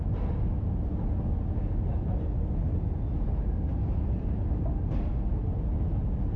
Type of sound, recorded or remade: recorded